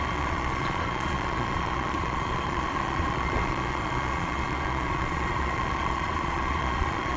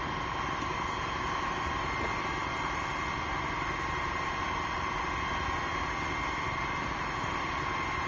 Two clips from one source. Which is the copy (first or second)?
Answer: first